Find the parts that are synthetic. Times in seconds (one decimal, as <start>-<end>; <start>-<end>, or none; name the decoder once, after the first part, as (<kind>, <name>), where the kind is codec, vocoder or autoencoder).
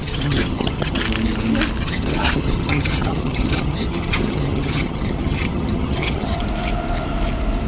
0.0-1.0 (vocoder, HiFi-GAN); 1.8-6.4